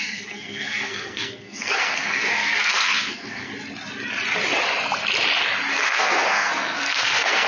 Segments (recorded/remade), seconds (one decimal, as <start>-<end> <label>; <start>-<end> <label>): 0.0-3.5 remade; 3.5-5.7 recorded; 5.7-7.5 remade